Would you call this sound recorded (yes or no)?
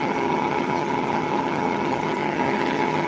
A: no